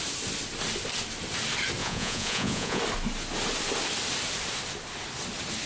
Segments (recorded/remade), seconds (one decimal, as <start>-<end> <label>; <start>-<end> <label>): 0.0-1.8 recorded; 1.8-2.8 remade; 2.8-5.7 recorded